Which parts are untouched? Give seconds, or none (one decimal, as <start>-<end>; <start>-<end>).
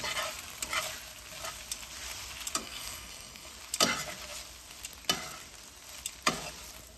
0.0-2.6; 3.5-7.0